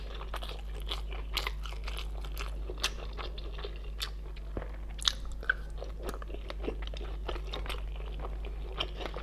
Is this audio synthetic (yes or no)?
no